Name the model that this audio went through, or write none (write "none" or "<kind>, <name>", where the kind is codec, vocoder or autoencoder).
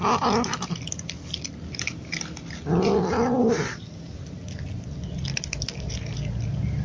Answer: none